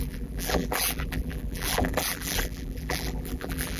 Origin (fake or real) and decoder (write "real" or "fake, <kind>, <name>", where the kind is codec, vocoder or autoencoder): fake, vocoder, BigVGAN v2